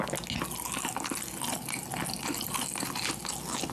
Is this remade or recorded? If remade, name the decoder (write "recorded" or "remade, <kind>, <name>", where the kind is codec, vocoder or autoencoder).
recorded